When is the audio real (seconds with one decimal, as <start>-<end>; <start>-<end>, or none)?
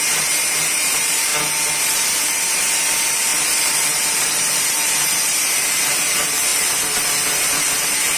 1.3-1.8